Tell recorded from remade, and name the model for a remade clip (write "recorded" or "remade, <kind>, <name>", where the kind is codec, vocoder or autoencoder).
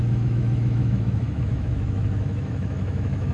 remade, autoencoder, DAC-VAE